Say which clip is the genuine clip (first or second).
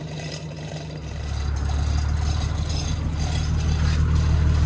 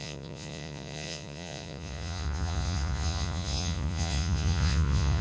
first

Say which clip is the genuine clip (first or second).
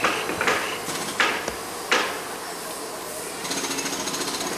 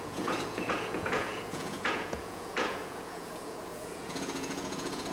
first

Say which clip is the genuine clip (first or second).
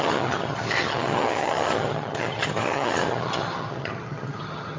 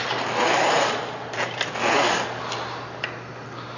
second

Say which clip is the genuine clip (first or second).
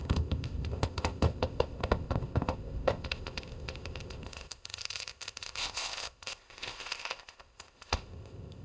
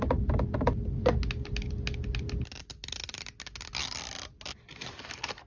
second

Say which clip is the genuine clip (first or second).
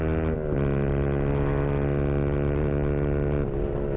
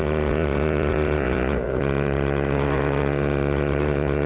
first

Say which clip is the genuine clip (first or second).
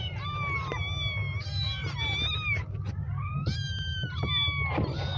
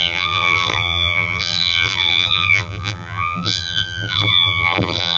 first